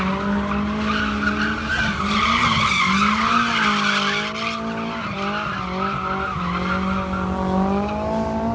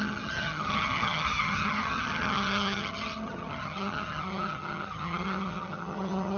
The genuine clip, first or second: first